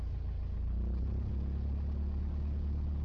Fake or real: real